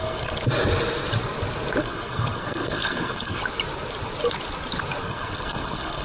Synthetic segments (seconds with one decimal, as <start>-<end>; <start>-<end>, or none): 0.0-0.4; 1.8-3.4; 5.0-6.0